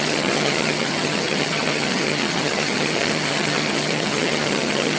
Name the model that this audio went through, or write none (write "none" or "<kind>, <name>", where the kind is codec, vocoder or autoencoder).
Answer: vocoder, HiFi-GAN